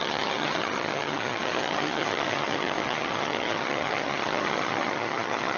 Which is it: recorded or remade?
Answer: remade